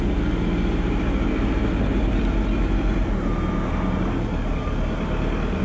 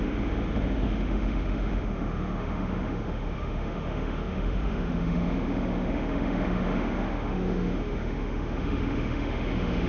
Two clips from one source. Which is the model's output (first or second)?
second